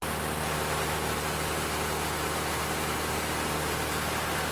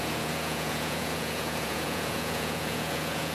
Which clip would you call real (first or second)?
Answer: first